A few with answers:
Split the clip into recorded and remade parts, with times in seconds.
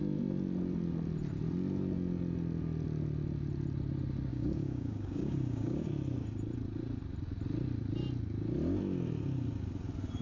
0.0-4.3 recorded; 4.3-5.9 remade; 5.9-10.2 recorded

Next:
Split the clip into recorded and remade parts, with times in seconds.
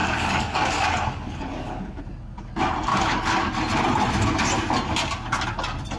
0.0-2.0 remade; 2.0-2.9 recorded; 2.9-3.5 remade; 3.5-6.0 recorded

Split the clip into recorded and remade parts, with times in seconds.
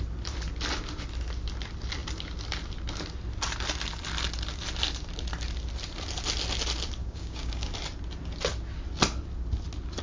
0.0-7.0 recorded; 7.0-7.7 remade; 7.7-10.0 recorded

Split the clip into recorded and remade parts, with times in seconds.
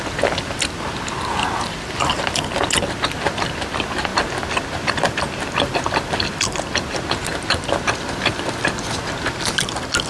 0.0-10.1 recorded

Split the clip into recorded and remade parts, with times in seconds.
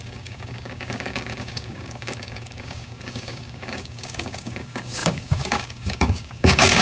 0.0-6.8 remade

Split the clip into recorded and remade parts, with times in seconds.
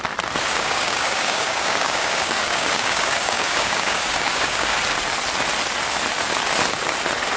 0.0-0.5 recorded; 0.5-4.8 remade; 4.8-7.4 recorded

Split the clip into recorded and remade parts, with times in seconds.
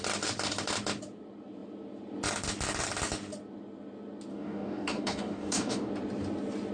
0.0-4.3 recorded; 4.3-5.9 remade; 5.9-6.7 recorded